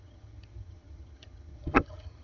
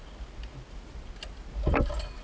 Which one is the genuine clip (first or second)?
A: second